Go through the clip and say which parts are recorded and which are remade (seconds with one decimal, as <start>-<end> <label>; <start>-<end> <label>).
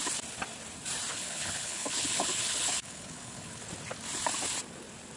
0.0-1.1 recorded; 1.1-3.6 remade; 3.6-5.2 recorded